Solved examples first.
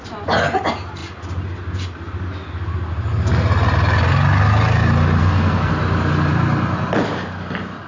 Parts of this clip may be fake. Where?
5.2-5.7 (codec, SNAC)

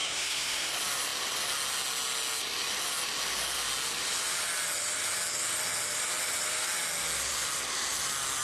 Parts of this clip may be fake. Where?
0.0-0.7 (codec, SNAC)

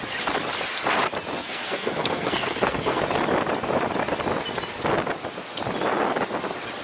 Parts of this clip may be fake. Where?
1.4-3.0 (codec, SNAC)

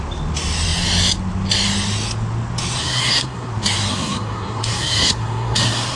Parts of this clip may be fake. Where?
2.8-3.5 (codec, SNAC); 3.9-6.0

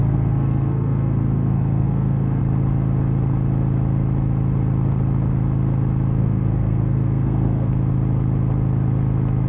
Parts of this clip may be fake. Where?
0.0-2.4 (codec, SNAC); 6.2-7.7